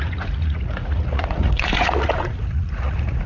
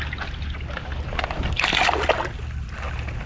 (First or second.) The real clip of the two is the second